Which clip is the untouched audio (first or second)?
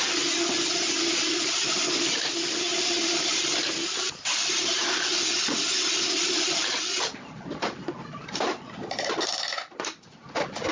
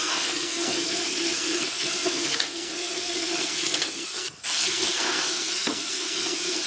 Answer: first